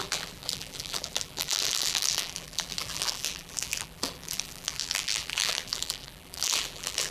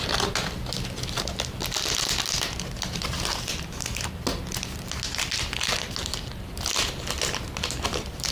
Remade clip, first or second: first